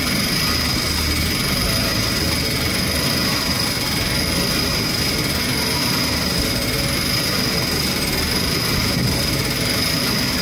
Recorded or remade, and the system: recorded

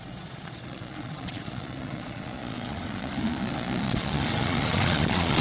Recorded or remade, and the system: remade, vocoder, Vocos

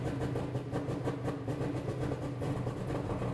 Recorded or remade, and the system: recorded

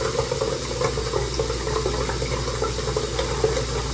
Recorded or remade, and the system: recorded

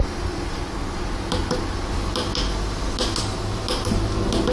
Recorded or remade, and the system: recorded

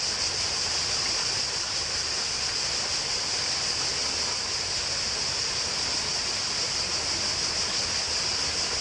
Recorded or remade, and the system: recorded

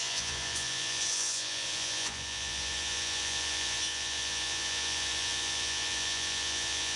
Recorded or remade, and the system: remade, vocoder, Vocos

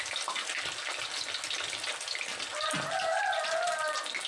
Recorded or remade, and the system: recorded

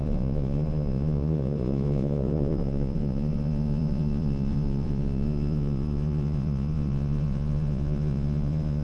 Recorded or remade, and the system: remade, vocoder, Vocos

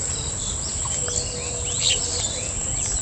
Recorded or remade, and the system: recorded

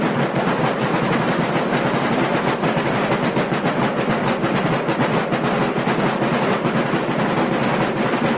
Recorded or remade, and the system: recorded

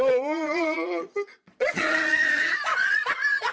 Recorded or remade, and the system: remade, vocoder, Vocos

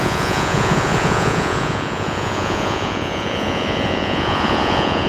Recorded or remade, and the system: remade, vocoder, Vocos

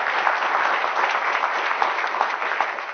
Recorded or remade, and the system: recorded